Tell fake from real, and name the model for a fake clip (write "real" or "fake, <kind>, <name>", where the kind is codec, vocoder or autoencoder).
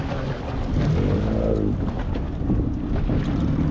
real